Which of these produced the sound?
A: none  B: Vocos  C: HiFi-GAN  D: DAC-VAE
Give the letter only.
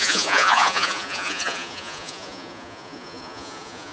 B